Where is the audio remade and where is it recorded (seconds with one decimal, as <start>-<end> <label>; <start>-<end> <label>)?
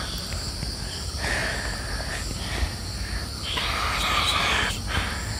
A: 0.0-5.4 recorded